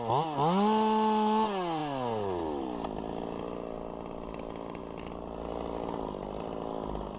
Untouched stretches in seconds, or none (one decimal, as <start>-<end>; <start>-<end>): 0.0-7.2